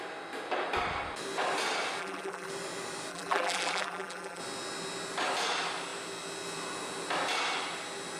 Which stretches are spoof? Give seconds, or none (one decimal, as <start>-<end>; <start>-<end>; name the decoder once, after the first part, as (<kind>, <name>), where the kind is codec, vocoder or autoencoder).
2.0-2.5 (vocoder, BigVGAN v2); 3.1-4.4